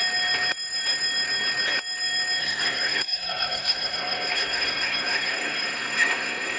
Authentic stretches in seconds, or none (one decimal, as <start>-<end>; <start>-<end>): 0.0-2.4